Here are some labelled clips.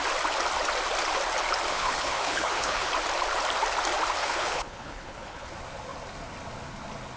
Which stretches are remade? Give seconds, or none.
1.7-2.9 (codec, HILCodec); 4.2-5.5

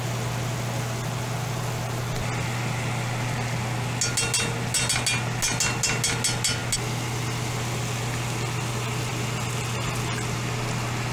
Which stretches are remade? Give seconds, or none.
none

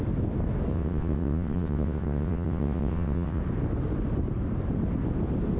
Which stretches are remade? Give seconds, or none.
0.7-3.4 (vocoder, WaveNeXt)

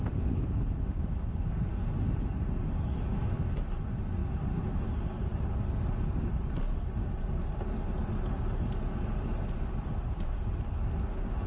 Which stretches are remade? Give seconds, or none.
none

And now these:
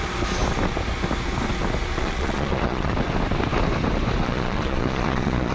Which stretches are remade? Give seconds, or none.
1.9-2.9 (vocoder, Vocos); 4.2-5.5

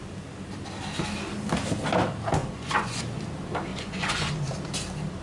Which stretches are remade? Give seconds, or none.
2.4-3.0 (vocoder, Vocos); 3.7-4.3